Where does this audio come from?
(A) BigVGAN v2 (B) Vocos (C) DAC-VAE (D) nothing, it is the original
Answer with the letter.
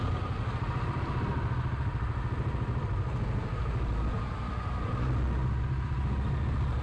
D